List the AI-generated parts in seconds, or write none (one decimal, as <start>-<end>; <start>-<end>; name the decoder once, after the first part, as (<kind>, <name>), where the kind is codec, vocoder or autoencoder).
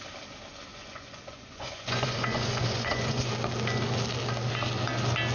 0.7-3.3 (vocoder, Vocos)